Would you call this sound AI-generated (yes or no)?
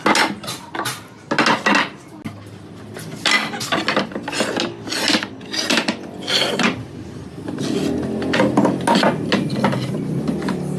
no